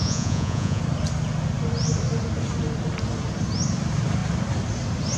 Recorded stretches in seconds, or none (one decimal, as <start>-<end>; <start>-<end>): 0.8-5.2